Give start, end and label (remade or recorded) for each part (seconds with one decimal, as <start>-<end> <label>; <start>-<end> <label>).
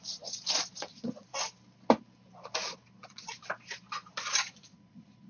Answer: 0.0-1.3 remade; 1.3-3.0 recorded; 3.0-3.4 remade; 3.4-4.5 recorded; 4.5-5.3 remade